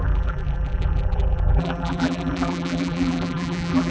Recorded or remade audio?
remade